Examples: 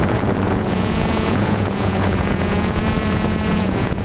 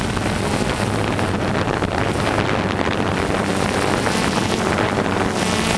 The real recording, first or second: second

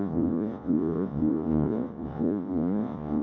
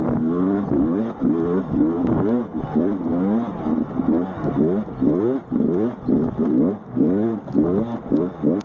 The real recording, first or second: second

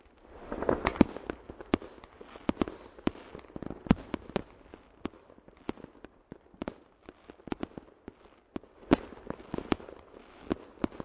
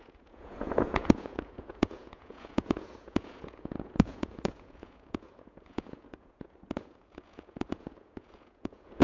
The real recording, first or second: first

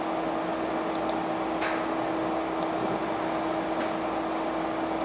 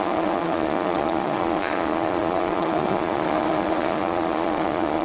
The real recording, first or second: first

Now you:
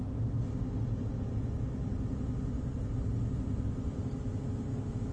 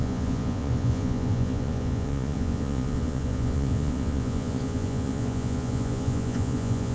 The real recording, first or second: first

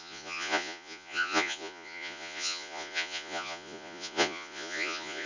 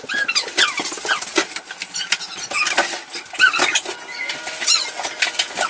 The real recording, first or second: second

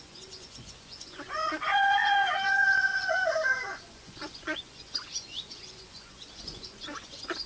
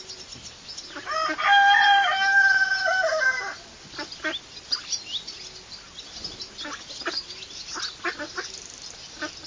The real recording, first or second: second